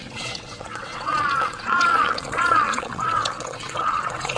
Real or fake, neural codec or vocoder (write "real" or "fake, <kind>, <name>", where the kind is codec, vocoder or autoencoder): fake, vocoder, WaveNeXt